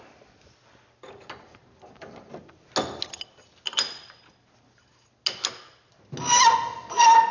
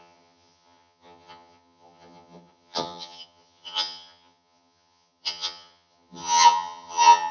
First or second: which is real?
first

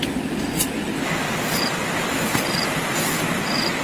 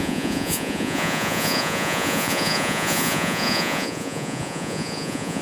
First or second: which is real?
first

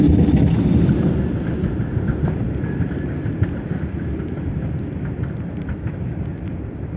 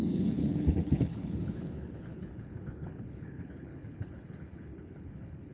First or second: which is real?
first